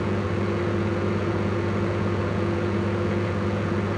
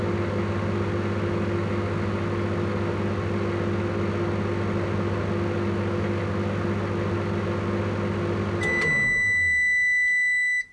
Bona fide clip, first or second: second